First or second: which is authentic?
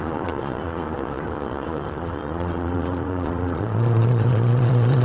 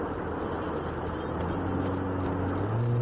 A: second